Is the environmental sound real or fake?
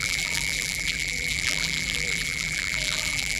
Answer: fake